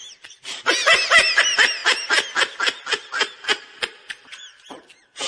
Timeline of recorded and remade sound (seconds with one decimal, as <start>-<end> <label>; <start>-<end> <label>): 0.0-0.7 remade; 0.7-5.3 recorded